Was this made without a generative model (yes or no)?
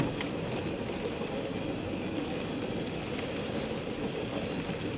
yes